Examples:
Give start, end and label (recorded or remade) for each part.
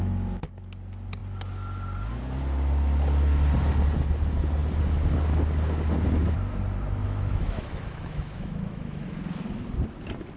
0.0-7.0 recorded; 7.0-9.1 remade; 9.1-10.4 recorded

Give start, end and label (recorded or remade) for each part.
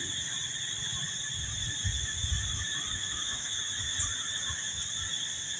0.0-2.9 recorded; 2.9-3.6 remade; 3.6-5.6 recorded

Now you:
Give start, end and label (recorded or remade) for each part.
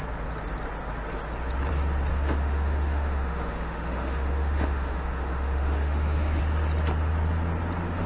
0.0-2.1 recorded; 2.1-6.4 remade; 6.4-8.1 recorded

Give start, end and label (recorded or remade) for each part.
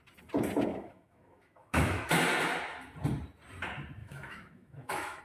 0.0-0.7 recorded; 0.7-2.2 remade; 2.2-4.0 recorded; 4.0-5.2 remade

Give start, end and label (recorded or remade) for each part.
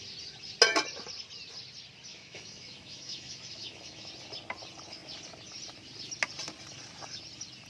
0.0-2.1 recorded; 2.1-4.1 remade; 4.1-7.7 recorded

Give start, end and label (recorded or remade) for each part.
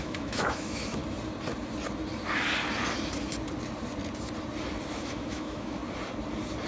0.0-1.0 remade; 1.0-5.0 recorded; 5.0-5.8 remade; 5.8-6.7 recorded